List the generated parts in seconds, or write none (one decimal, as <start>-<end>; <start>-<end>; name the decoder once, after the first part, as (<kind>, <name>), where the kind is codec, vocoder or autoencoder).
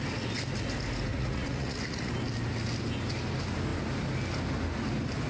1.1-2.1 (vocoder, Vocos)